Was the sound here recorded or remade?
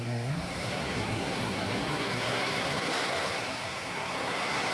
remade